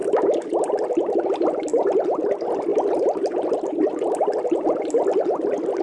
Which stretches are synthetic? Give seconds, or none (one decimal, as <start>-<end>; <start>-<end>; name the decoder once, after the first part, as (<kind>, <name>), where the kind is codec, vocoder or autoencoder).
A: none